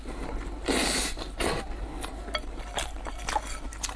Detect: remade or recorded recorded